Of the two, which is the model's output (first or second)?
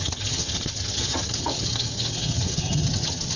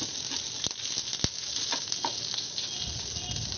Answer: first